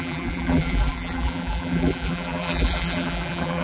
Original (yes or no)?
no